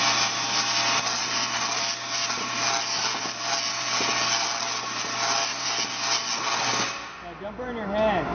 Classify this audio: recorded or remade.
recorded